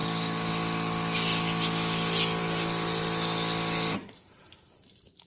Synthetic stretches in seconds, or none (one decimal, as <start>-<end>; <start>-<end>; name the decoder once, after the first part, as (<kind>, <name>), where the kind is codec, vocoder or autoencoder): none